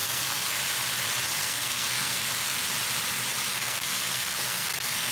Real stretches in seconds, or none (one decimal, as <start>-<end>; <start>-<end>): 0.6-1.4; 2.6-3.5